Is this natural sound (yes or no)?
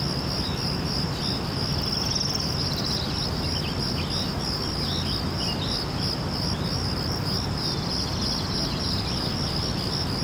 yes